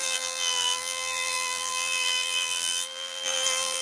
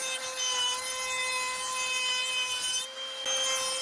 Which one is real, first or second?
second